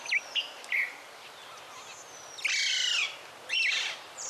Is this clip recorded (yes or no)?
yes